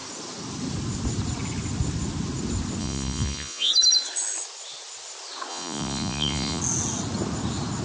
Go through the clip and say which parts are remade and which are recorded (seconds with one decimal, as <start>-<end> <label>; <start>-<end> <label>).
0.0-2.8 recorded; 2.8-3.7 remade; 3.7-5.5 recorded; 5.5-6.6 remade; 6.6-7.8 recorded